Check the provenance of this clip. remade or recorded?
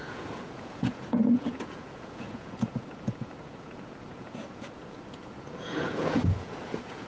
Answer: remade